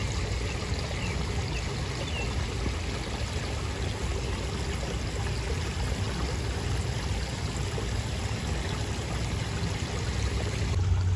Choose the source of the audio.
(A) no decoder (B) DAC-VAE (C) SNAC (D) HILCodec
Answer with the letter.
A